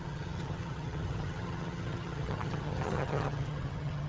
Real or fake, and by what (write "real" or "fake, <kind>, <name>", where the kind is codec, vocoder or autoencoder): fake, vocoder, HiFi-GAN